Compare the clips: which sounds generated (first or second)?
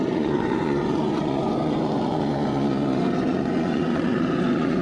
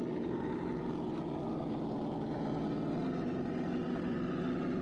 first